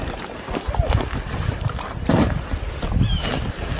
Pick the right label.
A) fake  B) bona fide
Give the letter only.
B